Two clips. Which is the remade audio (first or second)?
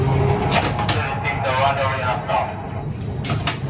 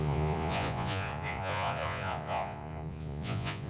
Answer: second